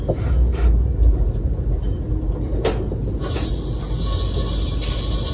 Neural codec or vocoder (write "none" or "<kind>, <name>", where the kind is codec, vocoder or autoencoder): none